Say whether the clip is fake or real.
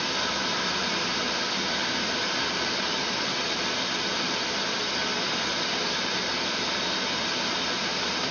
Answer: real